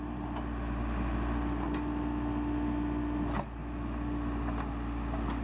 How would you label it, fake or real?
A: real